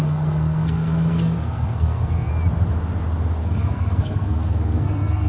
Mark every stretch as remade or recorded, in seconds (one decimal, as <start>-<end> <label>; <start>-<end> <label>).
0.0-2.3 remade; 2.3-3.4 recorded; 3.4-5.3 remade